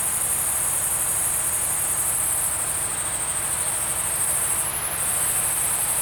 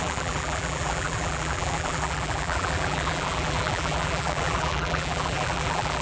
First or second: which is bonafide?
first